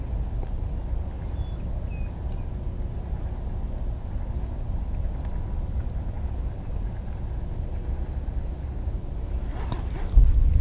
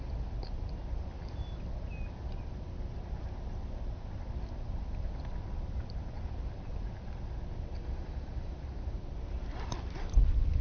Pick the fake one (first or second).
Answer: second